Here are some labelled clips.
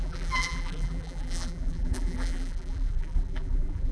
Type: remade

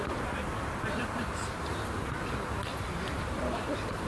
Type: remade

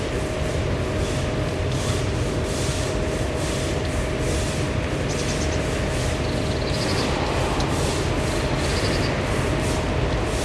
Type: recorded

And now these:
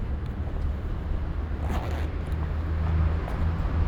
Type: recorded